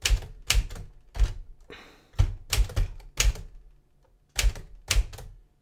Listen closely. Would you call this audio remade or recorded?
recorded